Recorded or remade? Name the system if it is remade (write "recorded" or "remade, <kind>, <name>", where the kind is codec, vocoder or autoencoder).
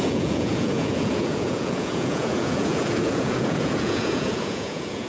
remade, vocoder, Vocos